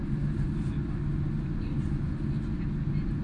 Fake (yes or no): no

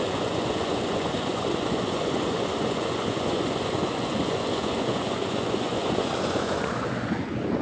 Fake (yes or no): yes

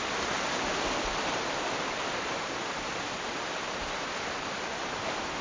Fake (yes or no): no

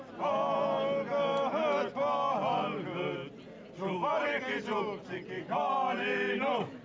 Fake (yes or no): no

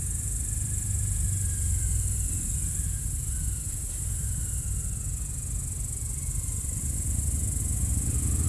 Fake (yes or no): no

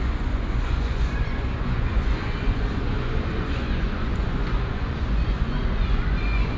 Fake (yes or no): yes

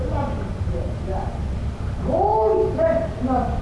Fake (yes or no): no